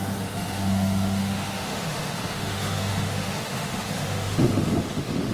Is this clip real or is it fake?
fake